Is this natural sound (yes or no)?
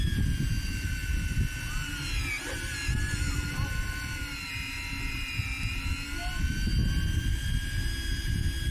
yes